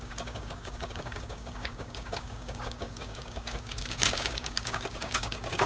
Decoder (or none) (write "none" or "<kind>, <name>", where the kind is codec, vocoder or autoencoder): codec, DAC